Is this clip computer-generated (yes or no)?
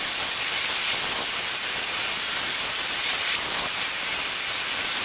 no